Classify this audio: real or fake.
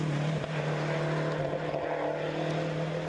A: real